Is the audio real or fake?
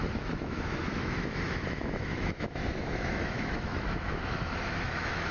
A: fake